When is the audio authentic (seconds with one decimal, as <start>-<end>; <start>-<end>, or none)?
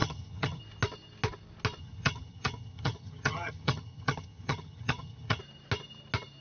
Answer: 0.6-1.8; 5.4-6.4